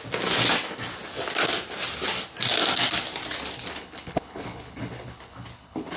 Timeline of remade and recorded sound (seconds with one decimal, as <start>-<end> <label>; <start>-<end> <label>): 0.0-3.7 recorded; 3.7-6.0 remade